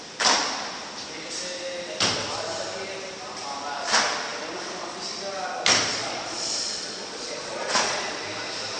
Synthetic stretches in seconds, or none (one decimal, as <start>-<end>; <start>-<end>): 6.0-8.2